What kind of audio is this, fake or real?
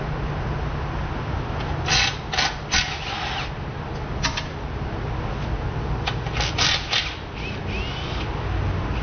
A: real